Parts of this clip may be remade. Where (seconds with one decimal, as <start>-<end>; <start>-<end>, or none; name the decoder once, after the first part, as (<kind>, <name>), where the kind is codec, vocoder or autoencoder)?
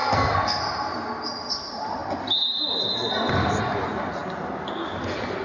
0.0-0.6 (codec, SNAC)